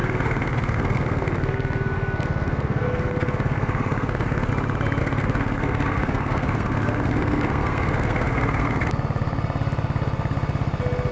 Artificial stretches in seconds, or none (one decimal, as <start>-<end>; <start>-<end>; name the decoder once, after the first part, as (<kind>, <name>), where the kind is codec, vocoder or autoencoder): 0.0-4.5 (codec, SNAC); 5.0-8.9